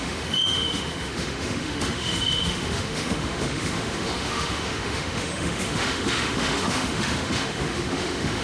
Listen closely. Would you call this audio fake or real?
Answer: fake